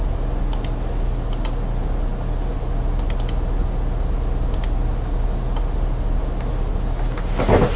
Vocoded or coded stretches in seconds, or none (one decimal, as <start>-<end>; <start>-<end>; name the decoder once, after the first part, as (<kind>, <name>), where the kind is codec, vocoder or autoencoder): none